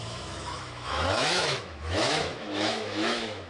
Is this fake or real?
fake